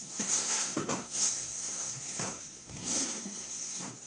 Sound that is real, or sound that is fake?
fake